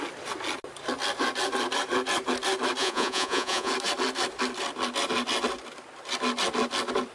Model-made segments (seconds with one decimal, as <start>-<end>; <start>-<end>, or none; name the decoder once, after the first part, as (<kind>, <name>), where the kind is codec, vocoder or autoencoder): 2.8-3.7 (vocoder, Vocos)

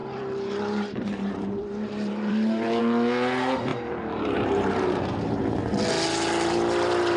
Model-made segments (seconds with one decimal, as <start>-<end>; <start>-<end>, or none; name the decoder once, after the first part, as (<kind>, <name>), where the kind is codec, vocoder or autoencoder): 0.0-2.8 (vocoder, BigVGAN v2); 3.7-5.4

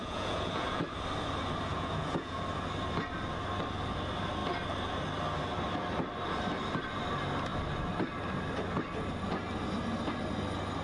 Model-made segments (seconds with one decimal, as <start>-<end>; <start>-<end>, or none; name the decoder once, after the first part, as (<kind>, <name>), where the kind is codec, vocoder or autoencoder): 0.0-0.8 (vocoder, Vocos); 1.7-2.4

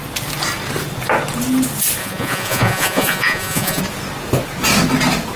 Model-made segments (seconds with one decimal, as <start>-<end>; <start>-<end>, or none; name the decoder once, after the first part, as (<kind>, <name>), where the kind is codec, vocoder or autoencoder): 2.0-3.8 (vocoder, Vocos)

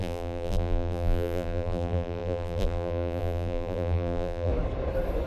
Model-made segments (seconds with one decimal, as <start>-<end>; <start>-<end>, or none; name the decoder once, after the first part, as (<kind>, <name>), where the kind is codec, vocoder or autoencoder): 0.0-4.5 (vocoder, BigVGAN v2)